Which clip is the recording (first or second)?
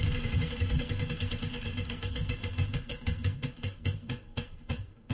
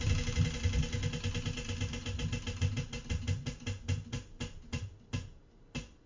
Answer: second